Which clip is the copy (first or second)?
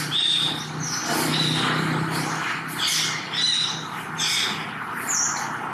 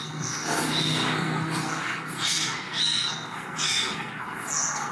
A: second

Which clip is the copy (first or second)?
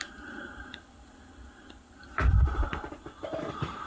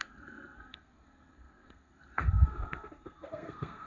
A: second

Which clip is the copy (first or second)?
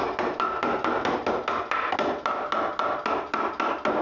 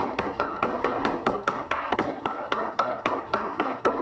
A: second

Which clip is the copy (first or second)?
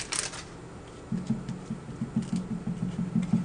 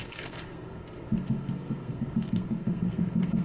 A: second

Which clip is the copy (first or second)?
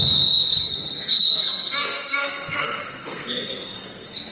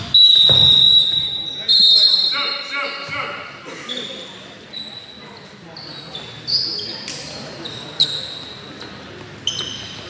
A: first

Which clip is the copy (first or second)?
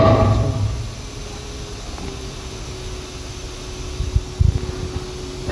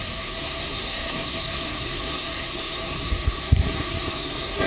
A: second